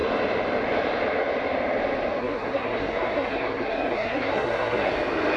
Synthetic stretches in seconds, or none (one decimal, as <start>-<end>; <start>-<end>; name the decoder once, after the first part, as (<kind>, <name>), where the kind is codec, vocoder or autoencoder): 2.2-4.9 (codec, SNAC)